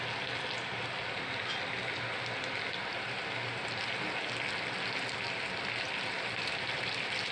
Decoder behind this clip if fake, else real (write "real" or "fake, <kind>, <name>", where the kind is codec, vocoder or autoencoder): real